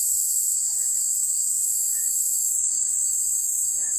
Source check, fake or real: fake